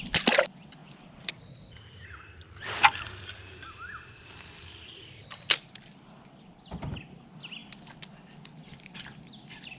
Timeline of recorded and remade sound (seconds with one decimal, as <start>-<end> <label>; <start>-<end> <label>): 0.0-9.8 recorded